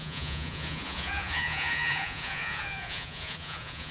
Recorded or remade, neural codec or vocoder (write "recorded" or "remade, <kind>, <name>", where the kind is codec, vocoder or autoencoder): remade, vocoder, Vocos